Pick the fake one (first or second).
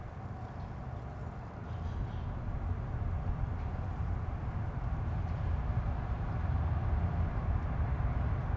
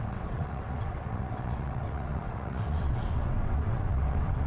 second